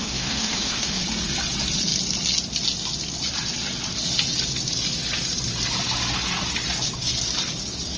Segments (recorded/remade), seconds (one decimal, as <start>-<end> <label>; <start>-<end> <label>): 0.0-1.0 remade; 1.0-8.0 recorded